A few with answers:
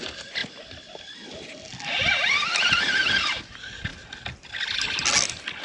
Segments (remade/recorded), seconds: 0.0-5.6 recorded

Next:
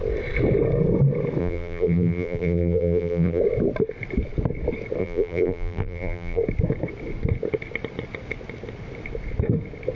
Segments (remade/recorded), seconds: 0.0-1.4 recorded; 1.4-3.4 remade; 3.4-5.0 recorded; 5.0-6.4 remade; 6.4-10.0 recorded

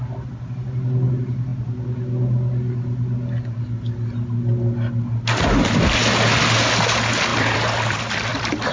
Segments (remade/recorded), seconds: 0.0-7.3 recorded; 7.3-8.7 remade

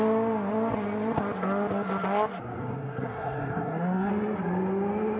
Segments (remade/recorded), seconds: 0.0-2.6 recorded; 2.6-4.1 remade; 4.1-5.2 recorded

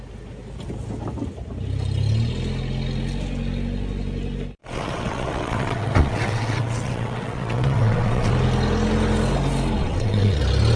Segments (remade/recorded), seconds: 0.0-4.6 recorded; 4.6-8.3 remade; 8.3-9.8 recorded; 9.8-10.4 remade; 10.4-10.8 recorded

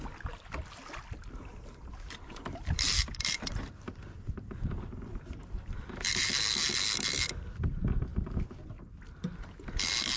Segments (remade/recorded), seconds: 0.0-1.5 recorded; 1.5-6.3 remade; 6.3-10.2 recorded

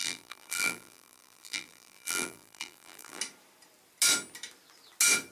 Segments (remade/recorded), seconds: 0.0-3.2 remade; 3.2-5.3 recorded